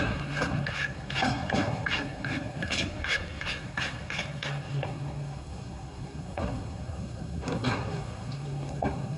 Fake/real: fake